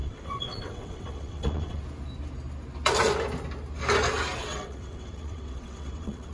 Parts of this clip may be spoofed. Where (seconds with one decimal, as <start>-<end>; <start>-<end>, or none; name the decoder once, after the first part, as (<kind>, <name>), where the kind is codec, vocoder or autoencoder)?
0.0-1.8 (vocoder, WaveNeXt); 4.4-6.3